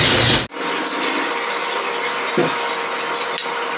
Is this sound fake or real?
real